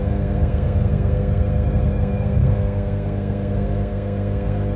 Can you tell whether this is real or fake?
fake